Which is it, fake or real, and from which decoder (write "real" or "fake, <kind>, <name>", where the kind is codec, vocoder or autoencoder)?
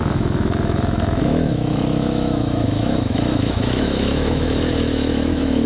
fake, autoencoder, DAC-VAE